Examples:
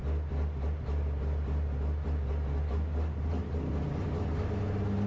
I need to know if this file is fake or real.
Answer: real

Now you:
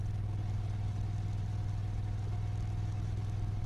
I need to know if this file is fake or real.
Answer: real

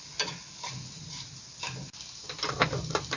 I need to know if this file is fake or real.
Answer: real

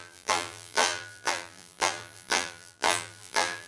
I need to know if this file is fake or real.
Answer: fake